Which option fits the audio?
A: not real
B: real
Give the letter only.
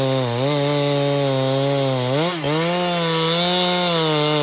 B